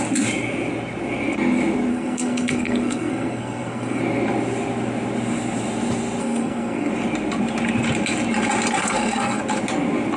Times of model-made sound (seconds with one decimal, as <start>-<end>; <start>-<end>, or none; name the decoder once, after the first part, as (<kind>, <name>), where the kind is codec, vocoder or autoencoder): 1.9-4.0 (codec, SNAC); 6.2-6.9; 8.8-9.4